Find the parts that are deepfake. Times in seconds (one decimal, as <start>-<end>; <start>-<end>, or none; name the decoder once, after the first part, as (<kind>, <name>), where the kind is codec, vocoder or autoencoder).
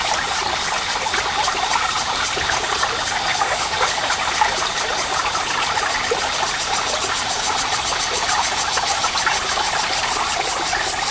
3.3-4.1 (codec, DAC)